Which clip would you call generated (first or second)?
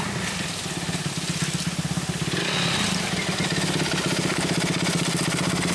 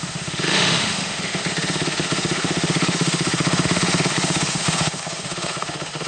second